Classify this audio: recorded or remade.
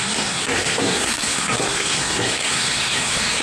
remade